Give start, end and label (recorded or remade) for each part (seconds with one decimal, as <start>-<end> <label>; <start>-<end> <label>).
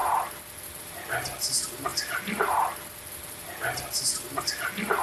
0.0-5.0 recorded